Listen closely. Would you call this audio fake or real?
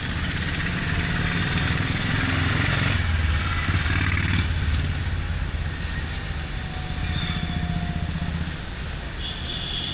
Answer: real